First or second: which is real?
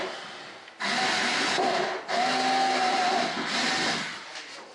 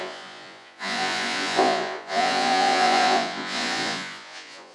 first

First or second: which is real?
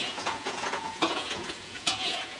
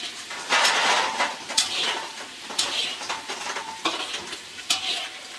second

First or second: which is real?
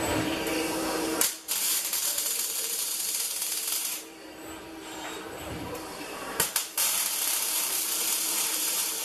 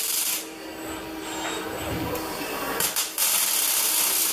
second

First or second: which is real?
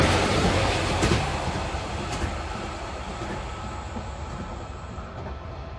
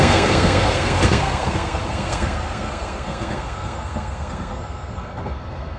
first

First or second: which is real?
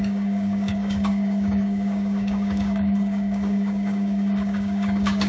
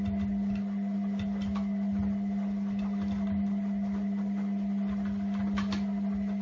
second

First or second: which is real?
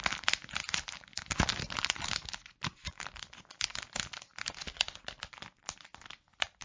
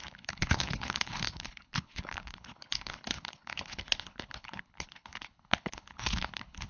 first